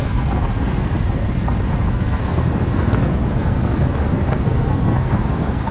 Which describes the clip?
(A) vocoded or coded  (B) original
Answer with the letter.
A